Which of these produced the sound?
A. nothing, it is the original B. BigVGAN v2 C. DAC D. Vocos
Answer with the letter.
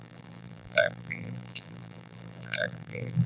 B